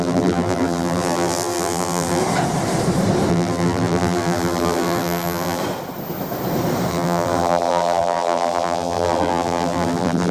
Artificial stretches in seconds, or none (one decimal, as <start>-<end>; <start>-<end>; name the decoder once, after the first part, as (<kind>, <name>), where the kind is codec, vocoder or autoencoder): 0.0-2.2 (vocoder, BigVGAN v2); 3.3-5.6; 6.9-10.3